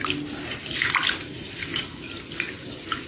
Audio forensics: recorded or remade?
recorded